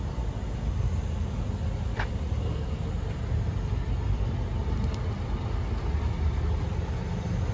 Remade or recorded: recorded